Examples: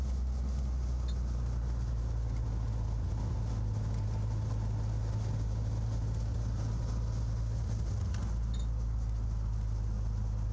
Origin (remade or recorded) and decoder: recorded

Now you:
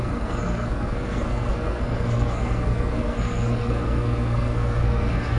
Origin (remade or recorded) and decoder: remade, codec, SNAC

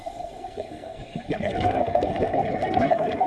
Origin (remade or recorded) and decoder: remade, codec, SNAC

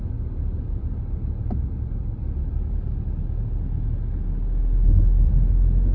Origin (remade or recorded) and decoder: recorded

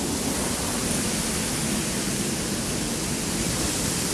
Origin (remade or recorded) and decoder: recorded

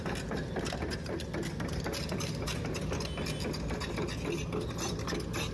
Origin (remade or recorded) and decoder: recorded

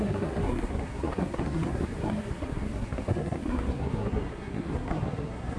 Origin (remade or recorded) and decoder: remade, codec, SNAC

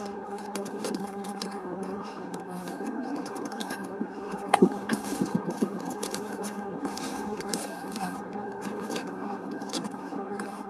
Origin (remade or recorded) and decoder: remade, codec, SNAC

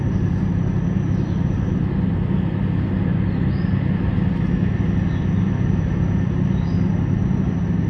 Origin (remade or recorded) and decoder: recorded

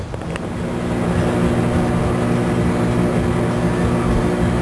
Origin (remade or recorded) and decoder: recorded